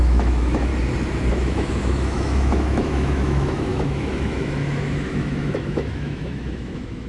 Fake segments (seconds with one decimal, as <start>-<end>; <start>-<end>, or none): 0.0-0.7; 1.3-7.1